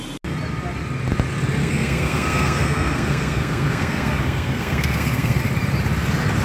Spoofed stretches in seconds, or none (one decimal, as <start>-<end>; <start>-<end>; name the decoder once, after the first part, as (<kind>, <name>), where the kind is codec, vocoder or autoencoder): 1.6-5.4 (codec, SNAC)